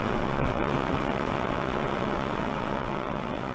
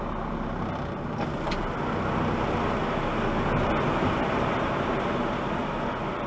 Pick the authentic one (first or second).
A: second